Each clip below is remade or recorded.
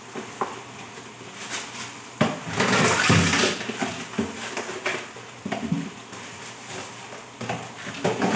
recorded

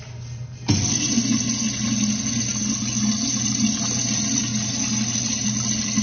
recorded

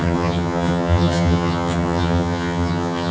remade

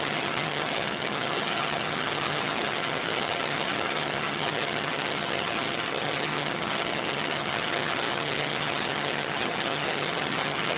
remade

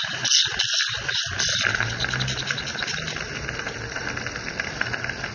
recorded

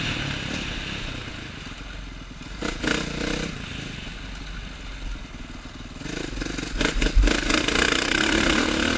recorded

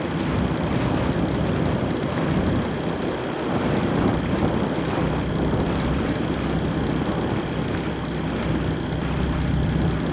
recorded